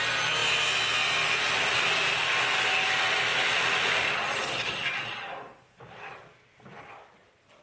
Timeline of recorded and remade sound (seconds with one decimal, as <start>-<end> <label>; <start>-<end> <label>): 0.0-7.6 recorded